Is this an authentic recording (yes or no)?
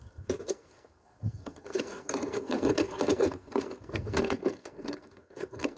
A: no